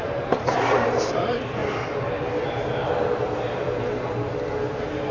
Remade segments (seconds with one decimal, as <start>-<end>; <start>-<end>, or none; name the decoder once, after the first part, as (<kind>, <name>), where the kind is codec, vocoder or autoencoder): 0.0-1.6 (vocoder, BigVGAN v2)